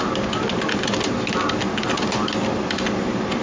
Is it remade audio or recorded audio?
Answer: recorded